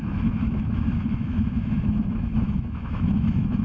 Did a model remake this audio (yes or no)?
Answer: yes